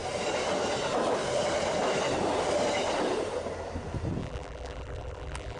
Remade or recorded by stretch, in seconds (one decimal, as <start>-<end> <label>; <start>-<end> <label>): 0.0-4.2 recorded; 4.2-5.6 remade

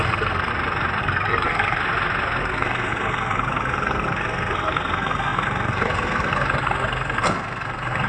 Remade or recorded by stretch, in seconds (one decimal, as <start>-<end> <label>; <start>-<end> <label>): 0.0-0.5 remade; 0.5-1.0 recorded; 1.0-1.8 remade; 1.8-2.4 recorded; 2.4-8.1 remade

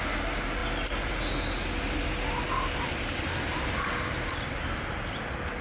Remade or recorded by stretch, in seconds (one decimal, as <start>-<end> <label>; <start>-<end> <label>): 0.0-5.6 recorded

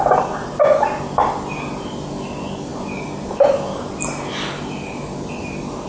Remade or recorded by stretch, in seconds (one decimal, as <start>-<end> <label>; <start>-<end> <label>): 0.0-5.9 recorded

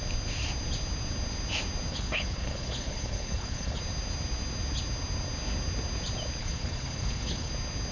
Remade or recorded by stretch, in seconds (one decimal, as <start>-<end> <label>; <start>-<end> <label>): 0.0-1.9 recorded; 1.9-3.8 remade; 3.8-6.4 recorded; 6.4-7.5 remade; 7.5-7.9 recorded